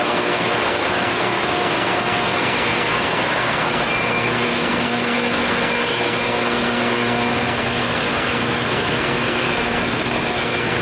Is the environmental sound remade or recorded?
remade